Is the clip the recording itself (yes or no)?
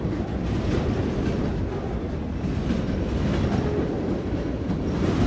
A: yes